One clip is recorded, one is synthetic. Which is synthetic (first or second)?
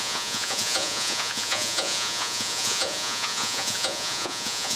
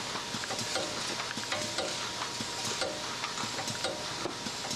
first